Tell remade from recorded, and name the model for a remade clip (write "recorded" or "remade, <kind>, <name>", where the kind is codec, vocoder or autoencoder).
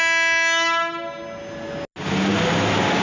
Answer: recorded